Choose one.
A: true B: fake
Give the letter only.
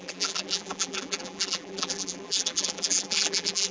B